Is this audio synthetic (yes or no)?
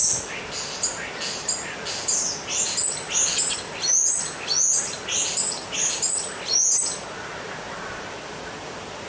no